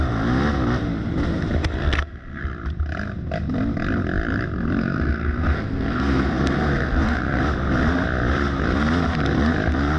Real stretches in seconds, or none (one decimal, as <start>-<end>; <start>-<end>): 0.0-1.8; 2.4-4.8; 7.4-10.0